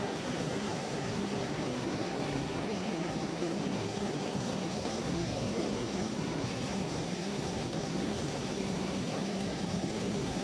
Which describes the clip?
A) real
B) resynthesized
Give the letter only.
B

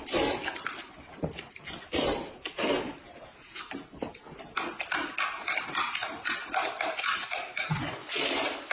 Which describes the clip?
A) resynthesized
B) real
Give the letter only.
B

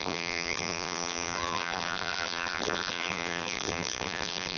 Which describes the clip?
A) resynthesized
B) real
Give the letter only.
A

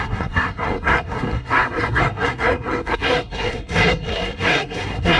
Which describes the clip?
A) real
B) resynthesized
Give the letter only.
B